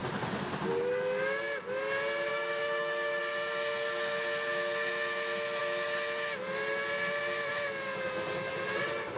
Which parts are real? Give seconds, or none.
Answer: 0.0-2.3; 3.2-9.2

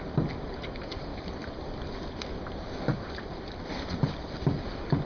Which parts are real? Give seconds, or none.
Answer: 0.0-5.1

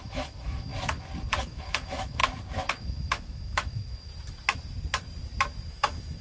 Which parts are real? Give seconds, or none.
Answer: 0.7-1.4; 2.2-2.8; 4.1-5.7

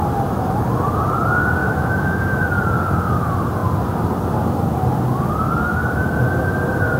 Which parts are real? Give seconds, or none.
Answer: 0.0-1.6; 2.2-7.0

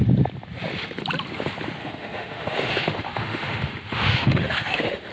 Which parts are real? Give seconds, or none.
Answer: 0.0-1.8

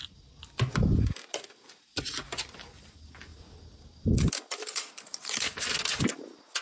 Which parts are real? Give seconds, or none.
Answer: 0.0-6.6

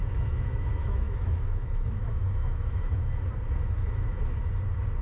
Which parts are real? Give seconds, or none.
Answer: 3.0-3.6; 4.2-5.0